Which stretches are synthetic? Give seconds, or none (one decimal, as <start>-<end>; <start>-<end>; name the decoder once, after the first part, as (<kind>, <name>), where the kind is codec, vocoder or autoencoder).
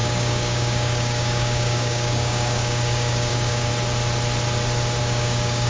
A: 0.0-3.7 (codec, DAC); 5.0-5.7